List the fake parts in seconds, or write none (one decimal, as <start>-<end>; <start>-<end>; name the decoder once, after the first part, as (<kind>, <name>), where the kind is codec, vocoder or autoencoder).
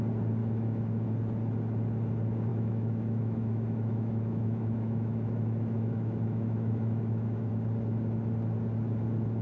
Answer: 0.4-1.1 (autoencoder, DAC-VAE); 2.5-7.5